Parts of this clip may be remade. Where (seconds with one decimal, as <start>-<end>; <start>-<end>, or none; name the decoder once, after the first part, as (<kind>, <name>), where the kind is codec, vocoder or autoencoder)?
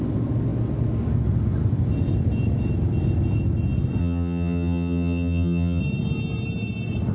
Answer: 4.0-5.8 (vocoder, HiFi-GAN)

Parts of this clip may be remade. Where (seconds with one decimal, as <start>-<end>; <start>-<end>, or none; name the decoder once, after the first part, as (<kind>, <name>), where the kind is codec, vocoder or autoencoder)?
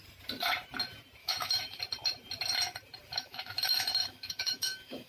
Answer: 1.2-1.8 (autoencoder, DAC-VAE); 3.1-5.1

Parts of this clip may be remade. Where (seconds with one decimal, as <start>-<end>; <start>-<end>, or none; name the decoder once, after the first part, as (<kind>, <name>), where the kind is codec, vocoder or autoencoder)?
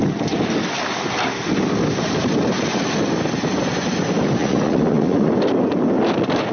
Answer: 4.4-5.3 (vocoder, Vocos)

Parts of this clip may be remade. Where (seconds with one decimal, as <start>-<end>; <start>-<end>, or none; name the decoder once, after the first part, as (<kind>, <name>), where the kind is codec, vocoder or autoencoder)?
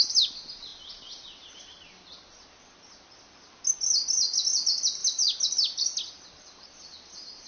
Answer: none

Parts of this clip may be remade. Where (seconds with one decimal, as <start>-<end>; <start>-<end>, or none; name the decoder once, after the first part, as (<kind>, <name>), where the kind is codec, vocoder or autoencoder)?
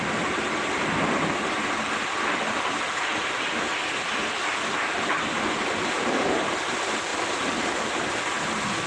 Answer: none